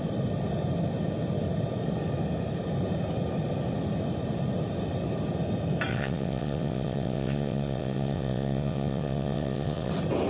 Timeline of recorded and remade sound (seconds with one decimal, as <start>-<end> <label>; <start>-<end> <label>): 0.0-5.9 recorded; 5.9-9.9 remade; 9.9-10.3 recorded